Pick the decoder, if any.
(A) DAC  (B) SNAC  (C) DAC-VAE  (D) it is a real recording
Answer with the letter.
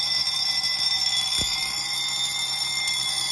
D